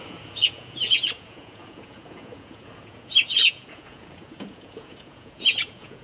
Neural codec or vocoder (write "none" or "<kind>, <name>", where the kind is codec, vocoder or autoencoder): vocoder, Vocos